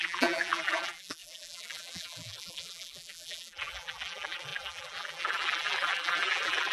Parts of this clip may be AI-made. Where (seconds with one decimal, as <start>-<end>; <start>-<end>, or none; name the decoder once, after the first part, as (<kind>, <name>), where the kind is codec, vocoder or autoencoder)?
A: 0.0-6.7 (vocoder, BigVGAN v2)